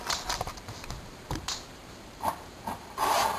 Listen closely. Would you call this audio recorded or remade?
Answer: remade